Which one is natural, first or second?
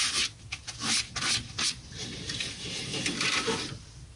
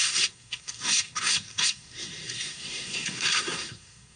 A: first